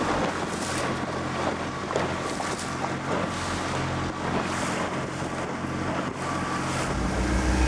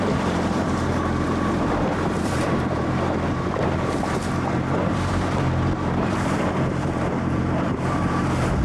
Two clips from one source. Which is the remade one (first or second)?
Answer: second